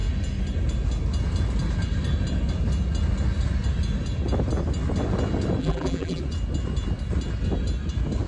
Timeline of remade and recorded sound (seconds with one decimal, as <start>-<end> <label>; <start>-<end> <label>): 0.0-5.6 recorded; 5.6-6.2 remade; 6.2-8.3 recorded